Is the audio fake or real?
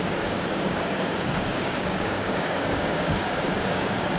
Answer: fake